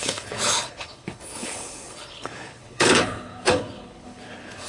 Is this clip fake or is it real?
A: fake